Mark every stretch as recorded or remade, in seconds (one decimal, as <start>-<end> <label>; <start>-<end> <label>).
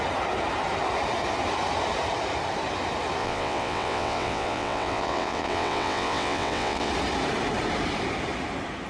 0.0-3.2 recorded; 3.2-6.9 remade; 6.9-8.9 recorded